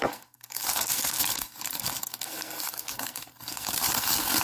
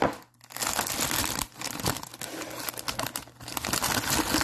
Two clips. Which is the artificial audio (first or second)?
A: first